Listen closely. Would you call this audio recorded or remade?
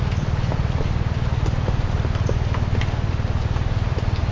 remade